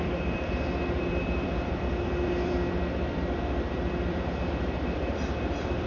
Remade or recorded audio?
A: remade